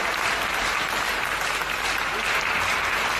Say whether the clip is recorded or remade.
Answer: recorded